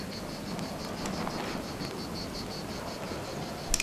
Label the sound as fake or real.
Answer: real